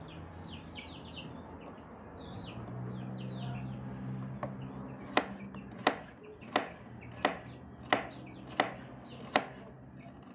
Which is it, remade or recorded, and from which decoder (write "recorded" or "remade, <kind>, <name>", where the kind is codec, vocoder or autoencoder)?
recorded